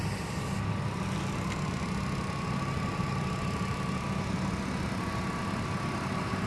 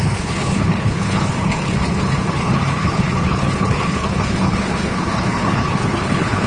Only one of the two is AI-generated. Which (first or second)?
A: second